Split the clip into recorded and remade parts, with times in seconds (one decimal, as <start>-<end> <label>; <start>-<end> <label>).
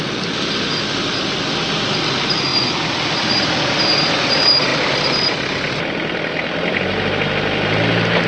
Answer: 0.0-8.3 recorded